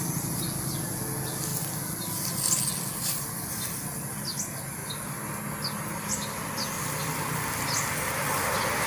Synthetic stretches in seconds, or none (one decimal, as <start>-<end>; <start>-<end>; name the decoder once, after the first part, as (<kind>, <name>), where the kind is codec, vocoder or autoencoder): none

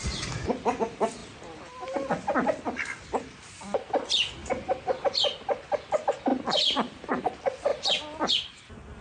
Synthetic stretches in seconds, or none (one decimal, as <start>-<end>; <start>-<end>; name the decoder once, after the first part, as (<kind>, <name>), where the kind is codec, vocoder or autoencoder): 6.3-7.2 (vocoder, BigVGAN v2)